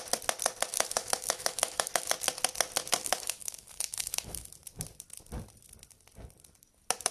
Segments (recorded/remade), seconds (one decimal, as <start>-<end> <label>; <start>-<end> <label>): 0.0-0.7 recorded; 0.7-2.1 remade; 2.1-3.0 recorded; 3.0-4.5 remade; 4.5-7.1 recorded